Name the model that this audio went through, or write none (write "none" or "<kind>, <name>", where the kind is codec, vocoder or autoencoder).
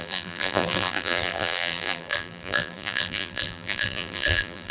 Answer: vocoder, BigVGAN v2